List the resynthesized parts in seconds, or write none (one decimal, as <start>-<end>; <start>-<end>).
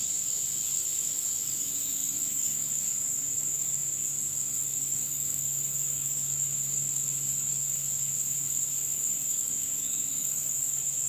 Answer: 0.0-11.1